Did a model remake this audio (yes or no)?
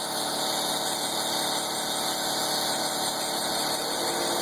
no